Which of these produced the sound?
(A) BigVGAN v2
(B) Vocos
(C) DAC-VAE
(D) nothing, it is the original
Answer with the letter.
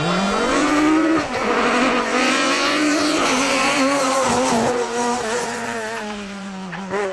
B